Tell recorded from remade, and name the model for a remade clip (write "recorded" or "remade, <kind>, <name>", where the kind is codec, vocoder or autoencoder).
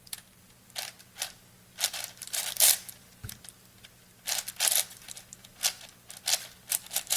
recorded